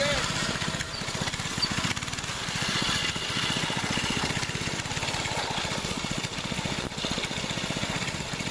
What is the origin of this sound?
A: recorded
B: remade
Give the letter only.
A